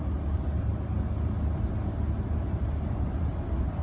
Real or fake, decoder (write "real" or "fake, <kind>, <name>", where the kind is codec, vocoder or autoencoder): real